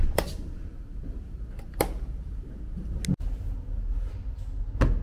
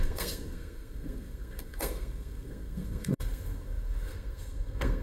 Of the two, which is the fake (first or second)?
second